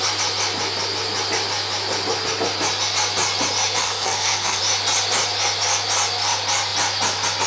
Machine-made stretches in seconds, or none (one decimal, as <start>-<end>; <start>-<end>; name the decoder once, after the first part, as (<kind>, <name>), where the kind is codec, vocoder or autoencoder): 3.8-4.6 (codec, SNAC)